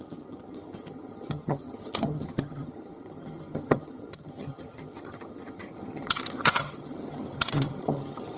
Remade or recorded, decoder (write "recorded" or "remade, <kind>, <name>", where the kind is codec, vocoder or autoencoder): remade, vocoder, HiFi-GAN